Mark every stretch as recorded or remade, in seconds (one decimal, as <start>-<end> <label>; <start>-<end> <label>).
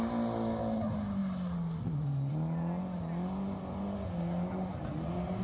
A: 0.0-5.4 recorded